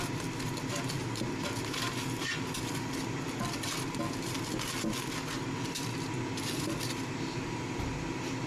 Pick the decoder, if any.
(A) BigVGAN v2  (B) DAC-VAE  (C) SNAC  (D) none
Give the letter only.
D